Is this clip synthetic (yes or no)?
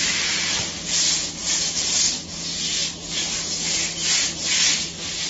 no